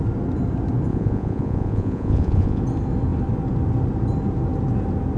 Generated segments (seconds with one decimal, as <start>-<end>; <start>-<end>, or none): 0.9-2.6